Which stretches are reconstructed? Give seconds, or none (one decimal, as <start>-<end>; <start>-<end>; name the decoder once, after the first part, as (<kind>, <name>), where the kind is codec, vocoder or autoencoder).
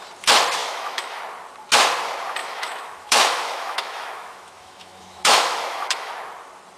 0.6-1.2 (autoencoder, DAC-VAE); 2.4-6.1